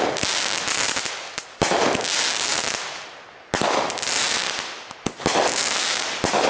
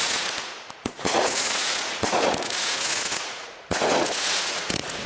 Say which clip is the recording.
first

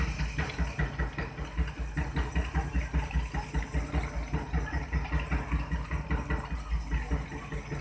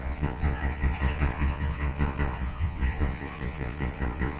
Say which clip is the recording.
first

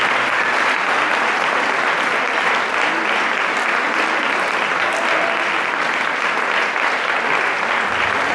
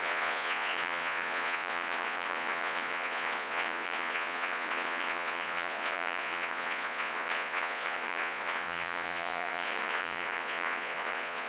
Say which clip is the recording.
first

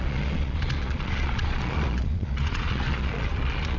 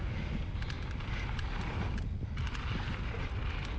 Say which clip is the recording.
second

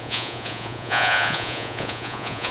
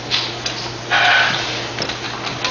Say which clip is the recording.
second